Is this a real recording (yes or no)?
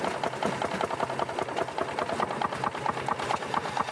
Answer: yes